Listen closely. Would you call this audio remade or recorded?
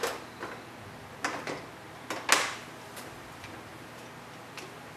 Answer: recorded